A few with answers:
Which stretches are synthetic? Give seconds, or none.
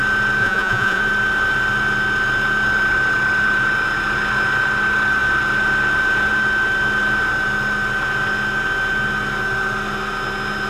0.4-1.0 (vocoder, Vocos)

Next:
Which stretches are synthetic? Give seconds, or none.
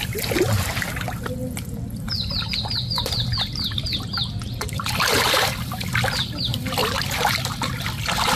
none